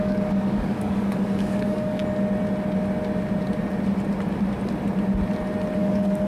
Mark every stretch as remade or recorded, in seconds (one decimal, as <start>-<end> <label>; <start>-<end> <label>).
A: 0.0-2.0 remade; 2.0-5.8 recorded; 5.8-6.3 remade

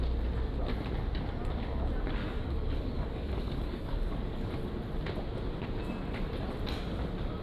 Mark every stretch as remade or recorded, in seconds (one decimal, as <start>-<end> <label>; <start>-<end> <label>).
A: 0.0-2.2 recorded; 2.2-4.5 remade; 4.5-7.4 recorded

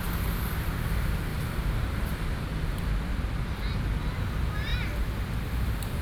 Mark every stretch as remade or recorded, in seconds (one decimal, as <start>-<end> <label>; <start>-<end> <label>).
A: 0.0-1.3 recorded; 1.3-2.9 remade; 2.9-6.0 recorded